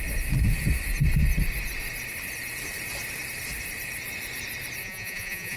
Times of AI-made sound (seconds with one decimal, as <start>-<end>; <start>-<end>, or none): 4.8-5.6